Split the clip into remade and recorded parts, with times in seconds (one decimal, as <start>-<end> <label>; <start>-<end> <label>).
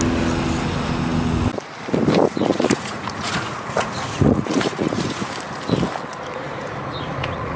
0.0-2.3 recorded; 2.3-5.3 remade; 5.3-6.3 recorded; 6.3-7.6 remade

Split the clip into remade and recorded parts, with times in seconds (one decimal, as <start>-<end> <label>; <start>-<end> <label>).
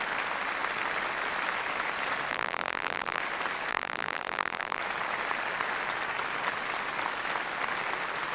0.0-2.3 recorded; 2.3-3.2 remade; 3.2-3.7 recorded; 3.7-4.8 remade; 4.8-8.3 recorded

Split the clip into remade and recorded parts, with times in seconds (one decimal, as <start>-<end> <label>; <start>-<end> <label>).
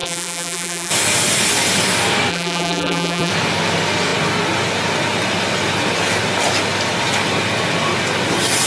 0.0-0.9 remade; 0.9-2.3 recorded; 2.3-3.3 remade; 3.3-8.7 recorded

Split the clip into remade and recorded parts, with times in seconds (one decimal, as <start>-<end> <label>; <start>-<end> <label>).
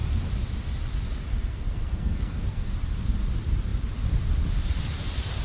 0.0-1.3 recorded; 1.3-2.7 remade; 2.7-5.4 recorded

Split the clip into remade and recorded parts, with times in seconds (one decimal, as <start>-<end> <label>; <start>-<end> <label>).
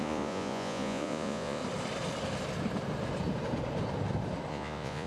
0.0-1.6 remade; 1.6-4.5 recorded; 4.5-5.1 remade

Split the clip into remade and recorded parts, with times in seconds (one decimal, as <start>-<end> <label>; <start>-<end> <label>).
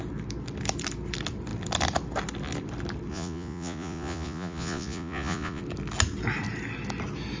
0.0-3.1 recorded; 3.1-5.6 remade; 5.6-7.4 recorded